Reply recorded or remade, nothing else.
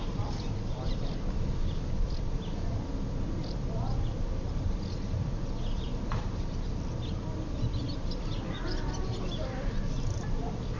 remade